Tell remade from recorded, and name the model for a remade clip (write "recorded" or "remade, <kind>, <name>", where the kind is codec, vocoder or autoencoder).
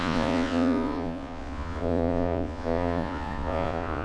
remade, vocoder, Vocos